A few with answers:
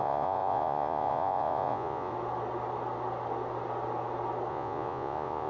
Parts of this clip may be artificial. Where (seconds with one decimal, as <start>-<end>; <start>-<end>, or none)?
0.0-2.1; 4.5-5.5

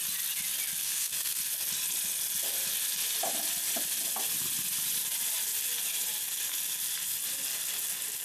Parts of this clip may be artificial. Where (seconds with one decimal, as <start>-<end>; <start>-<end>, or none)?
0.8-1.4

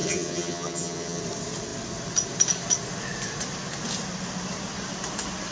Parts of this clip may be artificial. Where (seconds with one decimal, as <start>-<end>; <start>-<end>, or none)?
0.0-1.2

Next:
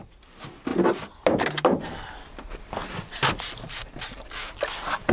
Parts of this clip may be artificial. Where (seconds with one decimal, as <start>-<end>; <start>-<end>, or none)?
none

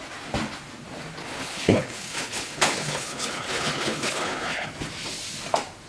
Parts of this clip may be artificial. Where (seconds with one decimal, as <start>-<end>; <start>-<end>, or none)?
1.2-4.7